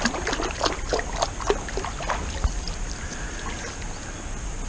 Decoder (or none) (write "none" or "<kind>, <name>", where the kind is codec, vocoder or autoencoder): none